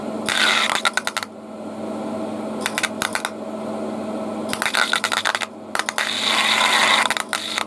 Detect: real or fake real